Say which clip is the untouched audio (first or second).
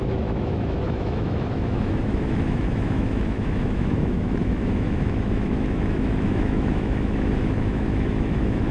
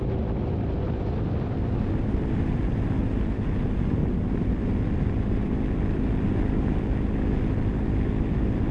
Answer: second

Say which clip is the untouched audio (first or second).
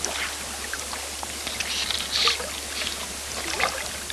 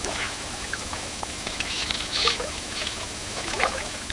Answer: first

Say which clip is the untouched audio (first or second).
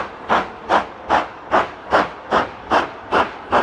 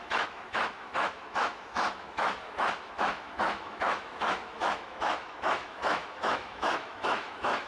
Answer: first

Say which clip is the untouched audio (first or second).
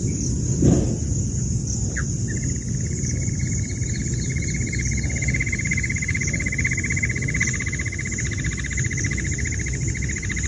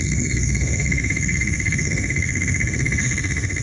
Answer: first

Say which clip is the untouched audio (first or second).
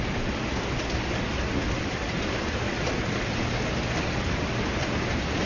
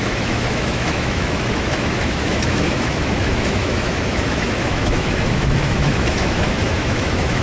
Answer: first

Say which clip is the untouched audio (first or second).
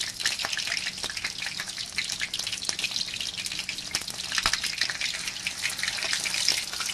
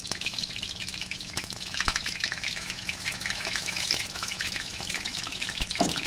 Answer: first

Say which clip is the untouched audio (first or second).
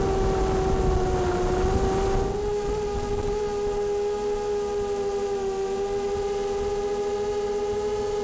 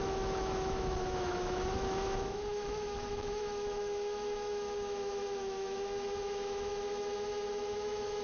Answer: first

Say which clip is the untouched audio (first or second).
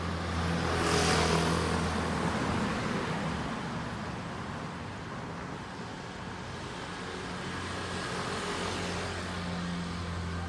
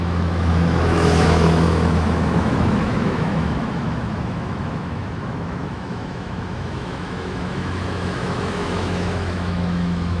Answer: first